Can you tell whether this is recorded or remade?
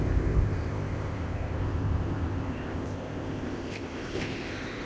remade